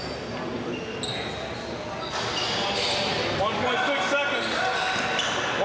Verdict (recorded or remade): recorded